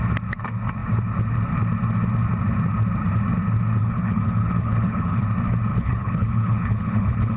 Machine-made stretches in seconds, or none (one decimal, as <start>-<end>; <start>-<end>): 3.8-5.2; 5.7-7.4